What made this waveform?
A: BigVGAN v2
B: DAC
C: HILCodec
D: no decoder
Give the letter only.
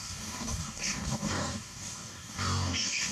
B